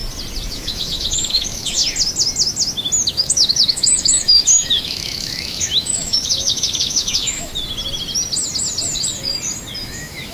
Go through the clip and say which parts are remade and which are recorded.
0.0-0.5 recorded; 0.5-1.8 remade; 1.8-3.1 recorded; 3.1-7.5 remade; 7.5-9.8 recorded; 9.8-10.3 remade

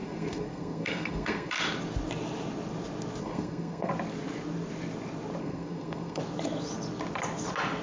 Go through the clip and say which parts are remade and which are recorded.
0.0-1.5 remade; 1.5-3.2 recorded; 3.2-3.9 remade; 3.9-5.4 recorded; 5.4-6.2 remade; 6.2-7.8 recorded

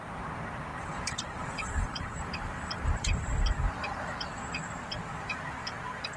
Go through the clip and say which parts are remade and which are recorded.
0.0-6.2 remade

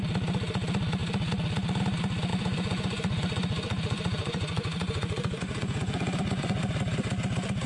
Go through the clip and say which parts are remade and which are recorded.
0.0-2.3 recorded; 2.3-6.6 remade; 6.6-7.7 recorded

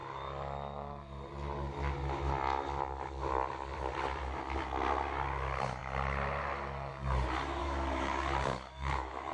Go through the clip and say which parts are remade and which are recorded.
0.0-7.6 recorded; 7.6-9.3 remade